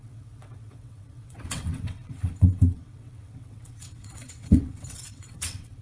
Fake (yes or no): yes